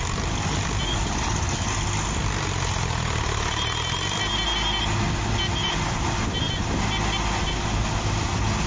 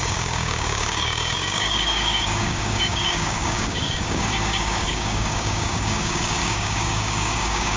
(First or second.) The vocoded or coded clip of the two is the second